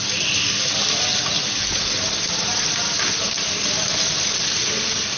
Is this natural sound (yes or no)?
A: yes